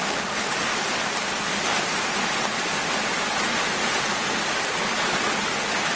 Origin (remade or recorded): recorded